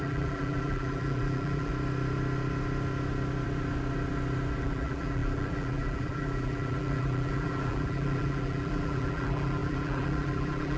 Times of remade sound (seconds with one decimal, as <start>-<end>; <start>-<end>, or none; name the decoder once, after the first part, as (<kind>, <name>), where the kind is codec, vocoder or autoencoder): 0.0-1.7 (vocoder, BigVGAN v2); 4.6-10.8